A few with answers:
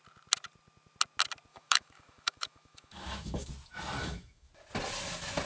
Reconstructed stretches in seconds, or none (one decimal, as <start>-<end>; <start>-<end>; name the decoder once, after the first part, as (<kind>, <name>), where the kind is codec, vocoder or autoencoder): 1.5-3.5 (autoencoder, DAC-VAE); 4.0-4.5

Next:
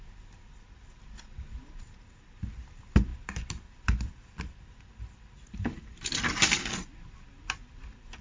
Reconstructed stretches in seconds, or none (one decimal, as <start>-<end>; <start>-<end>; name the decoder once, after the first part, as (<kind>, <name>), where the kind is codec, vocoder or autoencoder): none

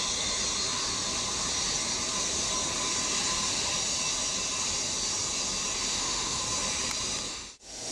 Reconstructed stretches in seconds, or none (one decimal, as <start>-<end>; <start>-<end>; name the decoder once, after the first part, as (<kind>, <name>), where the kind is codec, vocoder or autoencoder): 5.9-6.4 (autoencoder, DAC-VAE); 7.3-7.9

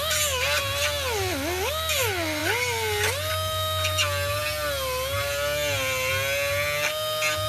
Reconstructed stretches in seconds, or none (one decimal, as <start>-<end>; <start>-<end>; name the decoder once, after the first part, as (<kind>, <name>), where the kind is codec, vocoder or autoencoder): none

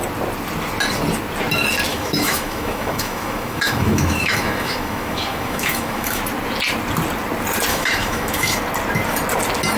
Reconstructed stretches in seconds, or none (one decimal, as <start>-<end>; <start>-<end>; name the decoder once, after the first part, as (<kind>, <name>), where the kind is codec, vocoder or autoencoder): 1.9-6.2 (autoencoder, DAC-VAE); 7.7-8.6